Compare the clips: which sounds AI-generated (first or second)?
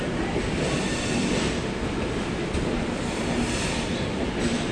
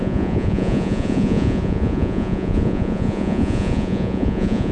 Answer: second